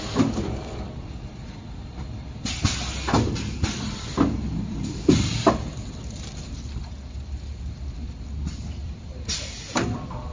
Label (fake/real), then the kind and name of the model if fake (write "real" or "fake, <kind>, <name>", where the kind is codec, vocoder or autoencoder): fake, vocoder, BigVGAN v2